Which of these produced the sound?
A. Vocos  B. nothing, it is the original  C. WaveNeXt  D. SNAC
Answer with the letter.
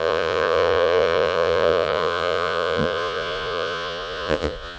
A